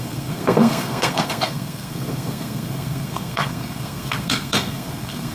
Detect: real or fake fake